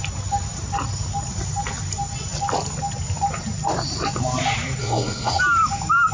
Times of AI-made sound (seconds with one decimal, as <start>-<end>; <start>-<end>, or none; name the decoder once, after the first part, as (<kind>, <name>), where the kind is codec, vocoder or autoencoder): 4.8-5.4 (codec, SNAC)